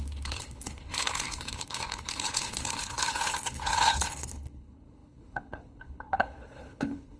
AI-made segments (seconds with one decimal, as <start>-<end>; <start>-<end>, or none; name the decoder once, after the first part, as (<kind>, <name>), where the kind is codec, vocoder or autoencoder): 0.0-7.2 (codec, HILCodec)